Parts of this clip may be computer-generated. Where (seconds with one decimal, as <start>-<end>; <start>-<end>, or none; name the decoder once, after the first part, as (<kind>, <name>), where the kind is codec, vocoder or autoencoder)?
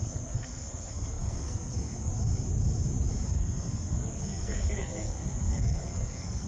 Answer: 0.0-2.1 (codec, SNAC); 3.3-6.5